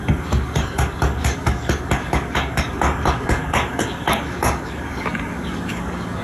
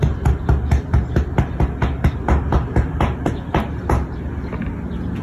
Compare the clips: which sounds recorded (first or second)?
second